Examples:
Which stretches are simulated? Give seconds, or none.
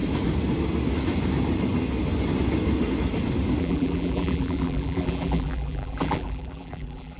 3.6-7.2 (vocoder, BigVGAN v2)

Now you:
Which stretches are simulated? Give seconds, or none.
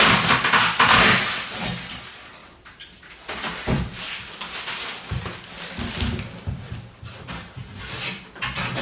none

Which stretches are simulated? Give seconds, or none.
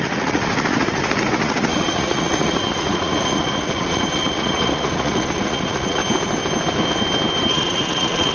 0.0-6.0 (vocoder, Vocos); 7.4-8.3